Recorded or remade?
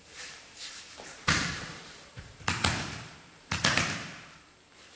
remade